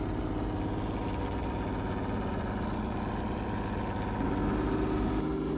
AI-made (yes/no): no